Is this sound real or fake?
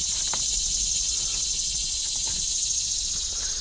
real